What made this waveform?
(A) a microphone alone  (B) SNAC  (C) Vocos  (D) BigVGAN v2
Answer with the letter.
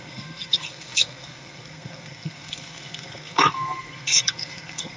B